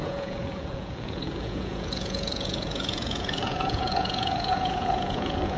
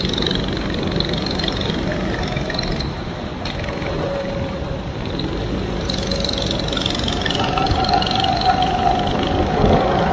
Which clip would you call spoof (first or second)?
first